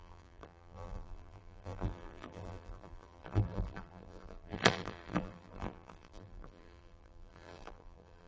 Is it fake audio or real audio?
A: fake